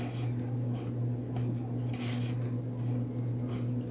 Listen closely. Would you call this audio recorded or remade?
recorded